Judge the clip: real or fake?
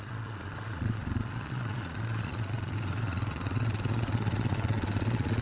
fake